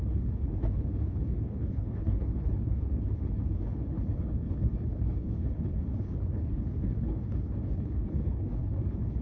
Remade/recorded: remade